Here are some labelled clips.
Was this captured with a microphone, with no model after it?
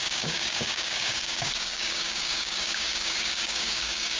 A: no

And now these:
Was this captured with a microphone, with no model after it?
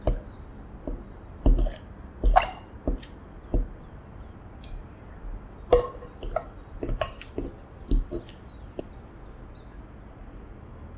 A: yes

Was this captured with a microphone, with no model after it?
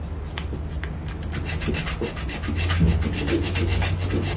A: yes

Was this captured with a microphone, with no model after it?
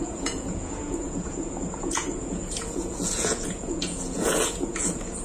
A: no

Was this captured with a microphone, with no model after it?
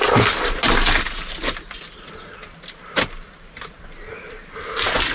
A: yes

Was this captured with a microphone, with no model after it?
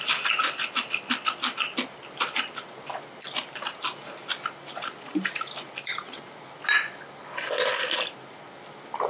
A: yes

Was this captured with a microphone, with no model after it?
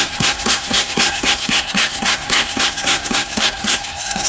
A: no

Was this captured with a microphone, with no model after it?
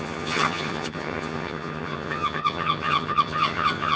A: no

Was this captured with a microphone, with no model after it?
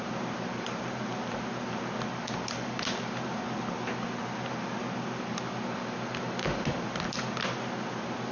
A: yes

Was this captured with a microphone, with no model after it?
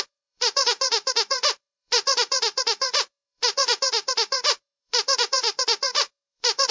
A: no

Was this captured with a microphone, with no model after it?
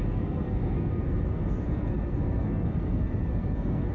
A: no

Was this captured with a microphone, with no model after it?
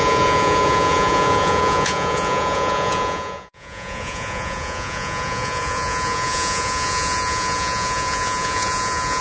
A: no